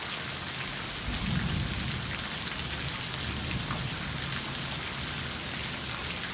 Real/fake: real